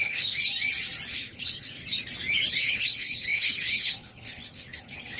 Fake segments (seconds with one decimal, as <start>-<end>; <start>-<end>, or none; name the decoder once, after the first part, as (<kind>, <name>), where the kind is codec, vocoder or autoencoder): 0.0-0.4 (codec, HILCodec); 1.1-1.8; 2.5-5.2